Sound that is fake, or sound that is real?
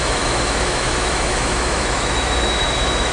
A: fake